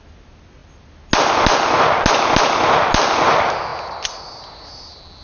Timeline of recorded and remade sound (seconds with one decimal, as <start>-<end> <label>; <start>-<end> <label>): 0.0-5.2 recorded